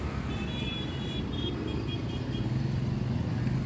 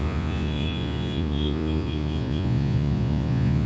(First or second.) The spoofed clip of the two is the second